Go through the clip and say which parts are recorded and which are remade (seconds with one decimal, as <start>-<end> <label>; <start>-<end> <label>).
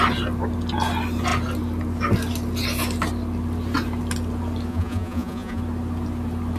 0.0-4.7 recorded; 4.7-5.6 remade; 5.6-6.6 recorded